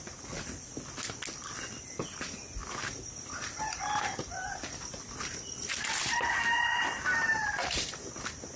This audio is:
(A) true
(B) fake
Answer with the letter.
A